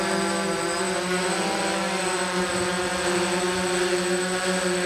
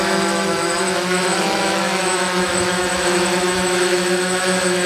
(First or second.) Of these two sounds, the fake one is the second